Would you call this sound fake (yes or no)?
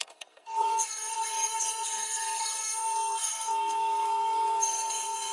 yes